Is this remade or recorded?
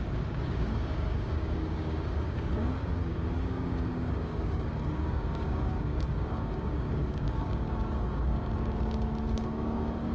remade